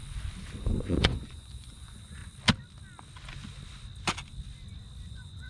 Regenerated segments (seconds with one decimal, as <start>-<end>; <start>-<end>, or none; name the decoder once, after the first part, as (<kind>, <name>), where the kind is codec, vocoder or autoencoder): 0.6-2.2 (vocoder, Vocos); 5.1-5.5